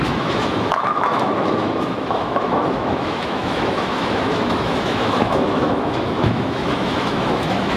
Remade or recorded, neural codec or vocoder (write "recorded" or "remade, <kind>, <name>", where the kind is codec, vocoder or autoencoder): remade, autoencoder, DAC-VAE